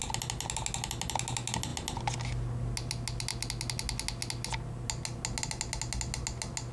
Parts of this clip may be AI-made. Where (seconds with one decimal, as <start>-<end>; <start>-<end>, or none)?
none